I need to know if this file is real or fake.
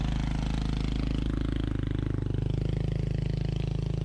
real